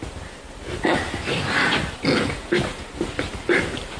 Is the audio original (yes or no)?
yes